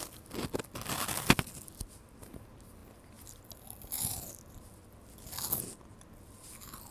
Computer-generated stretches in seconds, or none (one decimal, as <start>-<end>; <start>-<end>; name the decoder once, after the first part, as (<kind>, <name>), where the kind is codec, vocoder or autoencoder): none